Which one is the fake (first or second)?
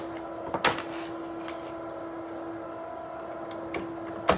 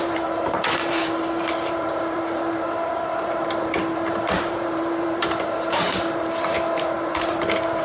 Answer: second